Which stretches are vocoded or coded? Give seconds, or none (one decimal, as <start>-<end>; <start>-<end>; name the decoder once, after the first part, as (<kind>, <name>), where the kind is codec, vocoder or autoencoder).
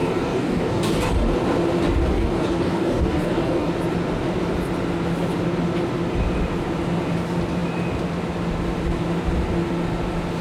0.0-1.1 (codec, DAC); 2.1-3.7